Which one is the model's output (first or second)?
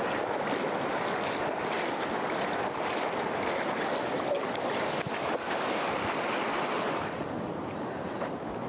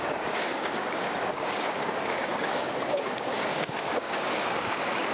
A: second